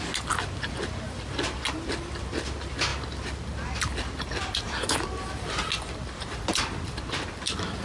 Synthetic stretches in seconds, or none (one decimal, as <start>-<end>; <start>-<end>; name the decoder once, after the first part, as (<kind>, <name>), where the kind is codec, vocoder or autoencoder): none